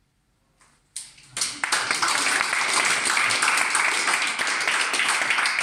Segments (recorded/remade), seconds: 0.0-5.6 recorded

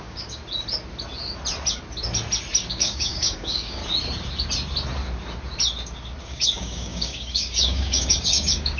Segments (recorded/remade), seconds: 0.0-0.4 remade; 0.4-2.7 recorded; 2.7-3.8 remade; 3.8-6.2 recorded; 6.2-8.8 remade

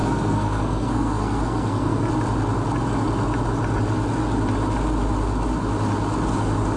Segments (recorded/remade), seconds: 0.0-2.1 remade; 2.1-6.8 recorded

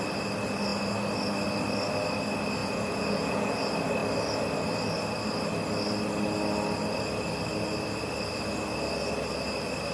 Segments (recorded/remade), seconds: 0.0-2.6 recorded; 2.6-3.6 remade; 3.6-9.9 recorded

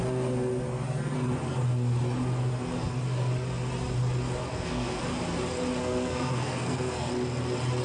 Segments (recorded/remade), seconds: 0.0-4.5 recorded; 4.5-5.0 remade; 5.0-5.8 recorded; 5.8-7.1 remade; 7.1-7.8 recorded

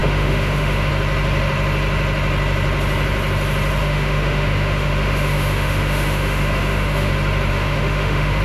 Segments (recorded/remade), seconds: 0.0-0.9 remade; 0.9-3.8 recorded; 3.8-7.1 remade; 7.1-7.5 recorded; 7.5-8.4 remade